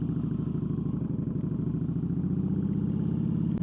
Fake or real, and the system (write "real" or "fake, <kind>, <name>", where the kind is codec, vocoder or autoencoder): real